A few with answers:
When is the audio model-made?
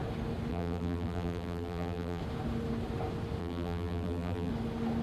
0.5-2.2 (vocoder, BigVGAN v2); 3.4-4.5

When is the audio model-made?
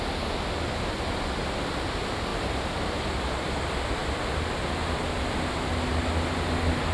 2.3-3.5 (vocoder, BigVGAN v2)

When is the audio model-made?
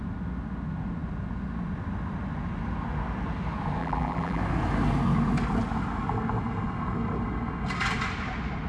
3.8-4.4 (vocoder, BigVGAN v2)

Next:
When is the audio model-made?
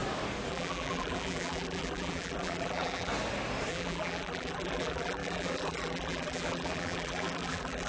0.5-3.1 (vocoder, BigVGAN v2); 3.7-7.9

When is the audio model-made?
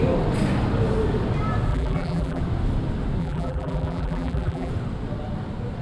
1.7-2.4 (vocoder, BigVGAN v2); 3.2-4.7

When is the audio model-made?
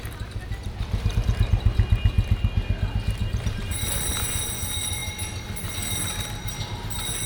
3.2-3.8 (vocoder, BigVGAN v2)